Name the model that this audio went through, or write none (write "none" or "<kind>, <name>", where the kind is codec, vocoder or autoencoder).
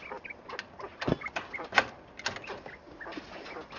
none